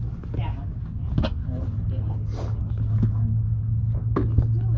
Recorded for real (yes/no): yes